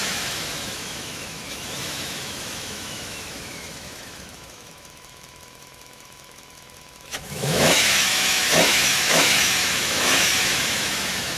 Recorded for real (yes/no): no